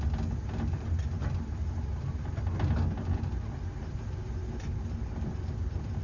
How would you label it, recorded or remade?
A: recorded